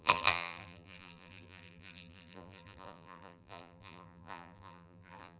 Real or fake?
fake